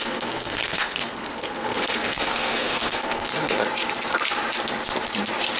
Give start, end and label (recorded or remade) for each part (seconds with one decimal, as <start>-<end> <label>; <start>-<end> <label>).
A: 0.0-3.3 remade; 3.3-5.6 recorded